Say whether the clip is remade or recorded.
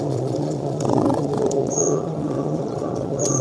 remade